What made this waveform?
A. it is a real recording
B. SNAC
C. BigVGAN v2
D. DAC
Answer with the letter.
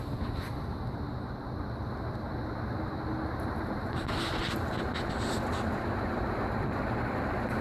A